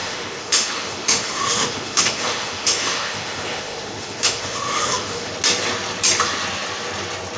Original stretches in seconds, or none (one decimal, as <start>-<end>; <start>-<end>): 5.3-7.4